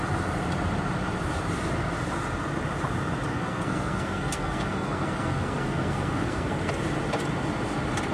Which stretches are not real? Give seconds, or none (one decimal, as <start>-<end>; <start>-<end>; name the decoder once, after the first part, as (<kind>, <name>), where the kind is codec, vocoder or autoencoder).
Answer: 3.3-6.7 (codec, SNAC)